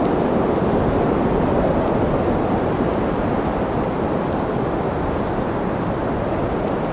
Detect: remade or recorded recorded